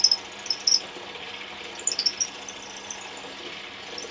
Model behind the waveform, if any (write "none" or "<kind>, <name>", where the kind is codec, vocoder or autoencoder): none